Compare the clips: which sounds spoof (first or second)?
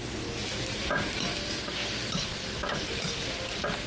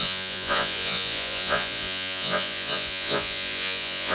second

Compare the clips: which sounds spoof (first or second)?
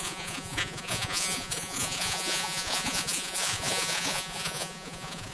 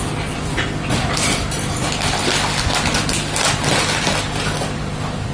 first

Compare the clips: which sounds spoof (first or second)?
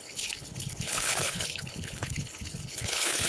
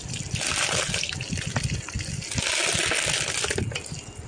first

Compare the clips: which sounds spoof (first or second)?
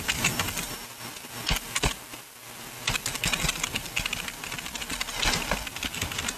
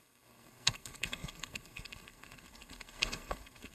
second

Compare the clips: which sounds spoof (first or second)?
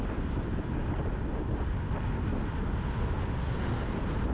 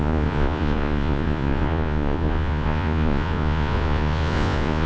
second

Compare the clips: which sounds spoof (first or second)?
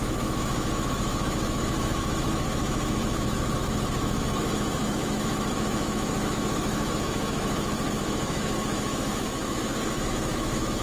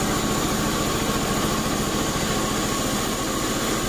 first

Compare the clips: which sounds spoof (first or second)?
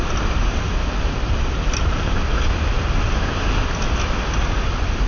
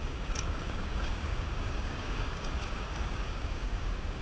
second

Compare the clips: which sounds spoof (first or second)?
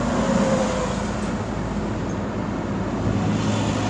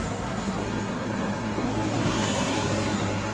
second